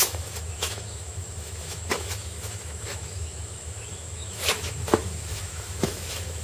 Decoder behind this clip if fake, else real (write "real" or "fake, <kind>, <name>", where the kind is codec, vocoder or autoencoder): fake, autoencoder, DAC-VAE